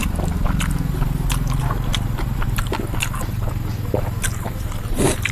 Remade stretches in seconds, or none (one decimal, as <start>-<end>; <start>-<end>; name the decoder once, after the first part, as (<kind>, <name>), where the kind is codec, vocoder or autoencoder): none